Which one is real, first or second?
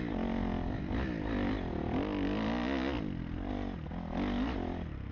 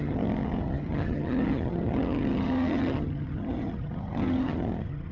first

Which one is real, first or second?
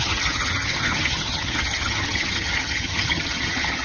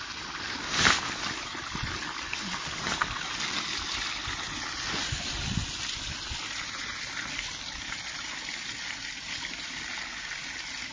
second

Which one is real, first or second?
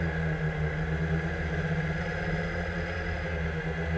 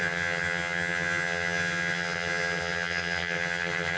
first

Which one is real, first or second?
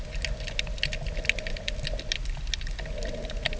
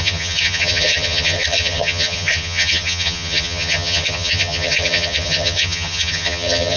first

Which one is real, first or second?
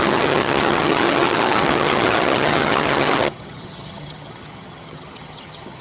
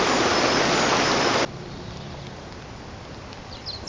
second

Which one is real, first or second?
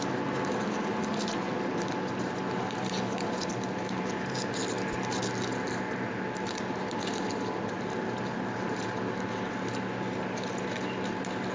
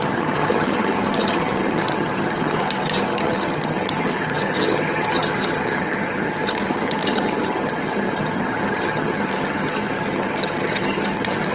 first